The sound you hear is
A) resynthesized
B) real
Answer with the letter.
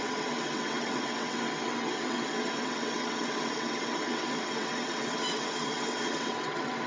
A